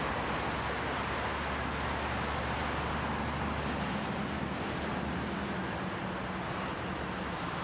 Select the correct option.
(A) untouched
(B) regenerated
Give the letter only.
A